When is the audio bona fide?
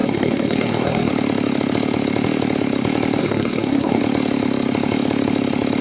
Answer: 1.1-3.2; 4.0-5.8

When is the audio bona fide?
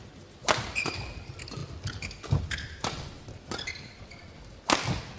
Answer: 0.0-5.2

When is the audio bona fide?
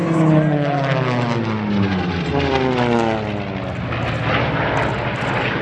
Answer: 0.0-5.6